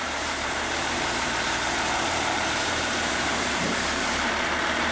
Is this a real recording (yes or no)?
no